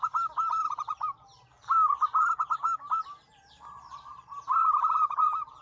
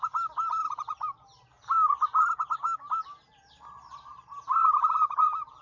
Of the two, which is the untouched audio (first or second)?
second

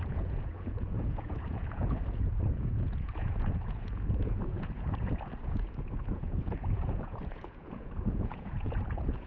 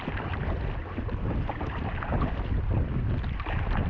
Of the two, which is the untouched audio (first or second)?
second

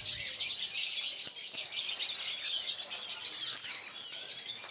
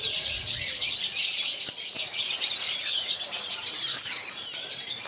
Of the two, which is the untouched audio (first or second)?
first